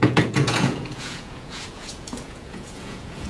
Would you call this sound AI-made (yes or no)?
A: yes